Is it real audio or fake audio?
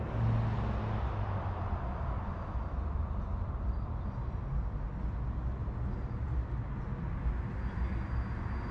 real